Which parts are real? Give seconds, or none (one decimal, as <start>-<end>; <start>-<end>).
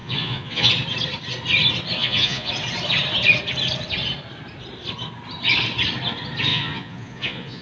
0.7-2.0; 2.5-6.5